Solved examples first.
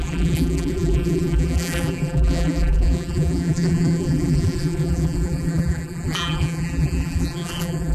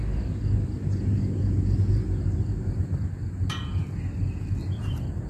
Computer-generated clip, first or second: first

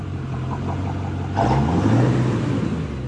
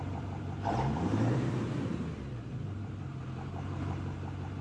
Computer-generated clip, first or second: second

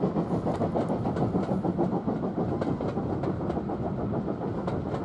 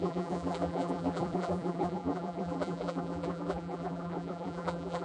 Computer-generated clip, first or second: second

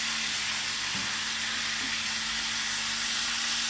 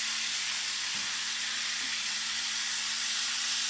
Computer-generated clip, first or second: second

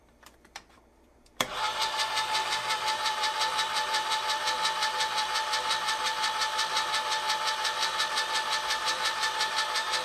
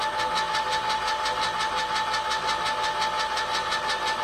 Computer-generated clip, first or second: first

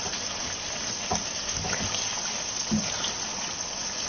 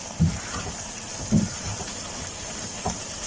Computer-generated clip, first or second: second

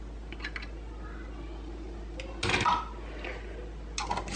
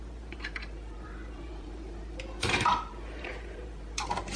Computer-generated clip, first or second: second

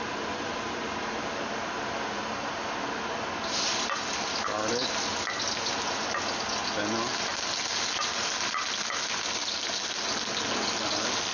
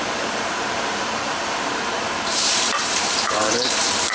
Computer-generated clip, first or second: second